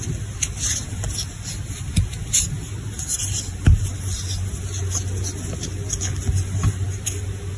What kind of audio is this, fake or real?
real